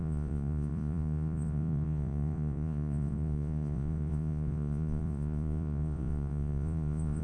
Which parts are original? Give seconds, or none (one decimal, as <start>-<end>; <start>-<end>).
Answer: none

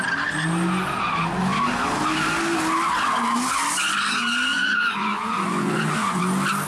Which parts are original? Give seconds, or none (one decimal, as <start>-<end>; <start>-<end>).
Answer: 0.0-4.5; 6.2-6.7

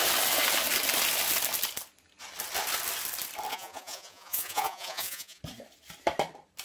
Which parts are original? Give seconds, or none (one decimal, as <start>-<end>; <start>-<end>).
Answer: 0.0-3.5; 5.4-6.6

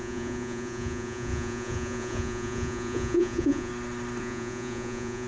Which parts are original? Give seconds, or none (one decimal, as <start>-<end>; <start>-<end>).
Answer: 3.7-4.2

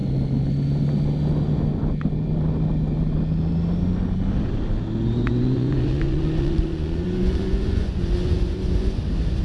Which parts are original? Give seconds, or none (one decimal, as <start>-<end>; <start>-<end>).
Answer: 0.0-5.2; 9.0-9.4